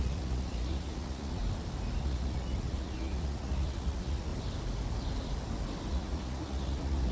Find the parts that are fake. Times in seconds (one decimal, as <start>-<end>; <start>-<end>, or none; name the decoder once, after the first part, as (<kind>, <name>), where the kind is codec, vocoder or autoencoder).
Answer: 0.0-1.4 (vocoder, Vocos); 2.0-4.3; 5.9-7.1